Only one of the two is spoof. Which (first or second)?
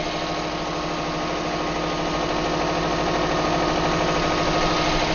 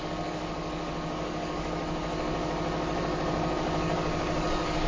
second